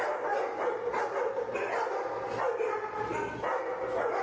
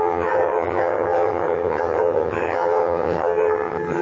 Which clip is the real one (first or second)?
first